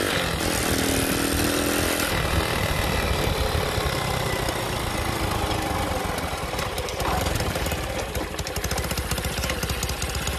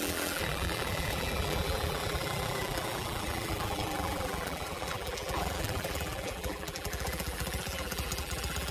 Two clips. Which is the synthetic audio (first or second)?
second